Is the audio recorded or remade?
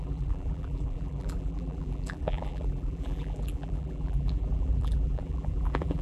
remade